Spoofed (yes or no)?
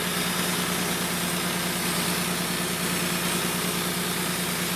no